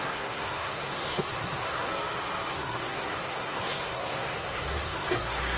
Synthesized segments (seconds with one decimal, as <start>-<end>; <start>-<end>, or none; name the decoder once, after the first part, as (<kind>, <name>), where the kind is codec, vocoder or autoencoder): 0.0-1.9 (codec, SNAC); 2.5-5.6